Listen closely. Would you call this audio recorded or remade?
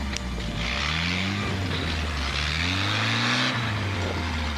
recorded